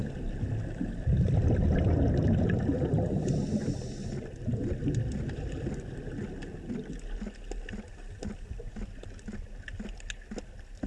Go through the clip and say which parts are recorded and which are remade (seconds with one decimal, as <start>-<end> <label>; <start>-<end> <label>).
0.0-10.9 recorded